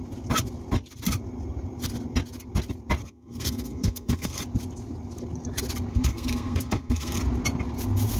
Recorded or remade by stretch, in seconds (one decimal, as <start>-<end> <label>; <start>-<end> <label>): 0.0-3.0 recorded; 3.0-4.4 remade; 4.4-5.9 recorded; 5.9-7.2 remade; 7.2-8.2 recorded